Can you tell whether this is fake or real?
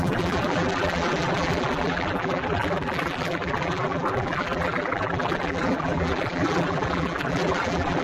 fake